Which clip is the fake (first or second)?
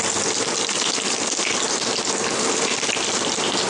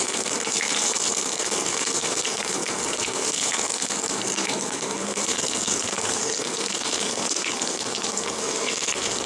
second